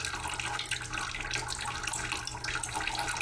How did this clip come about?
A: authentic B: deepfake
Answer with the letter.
A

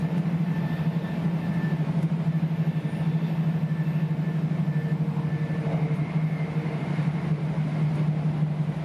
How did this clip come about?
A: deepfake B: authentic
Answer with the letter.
B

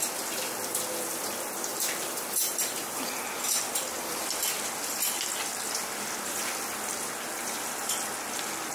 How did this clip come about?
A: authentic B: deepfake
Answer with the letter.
A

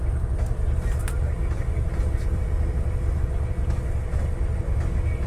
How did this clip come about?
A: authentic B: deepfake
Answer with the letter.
A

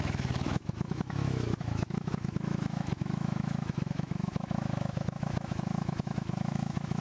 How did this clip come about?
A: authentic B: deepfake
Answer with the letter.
B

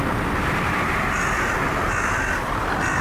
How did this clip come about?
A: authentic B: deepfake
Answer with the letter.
A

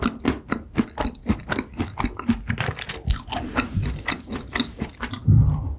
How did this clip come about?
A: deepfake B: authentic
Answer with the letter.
B